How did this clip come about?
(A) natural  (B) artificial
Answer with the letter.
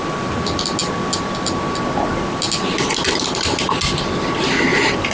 A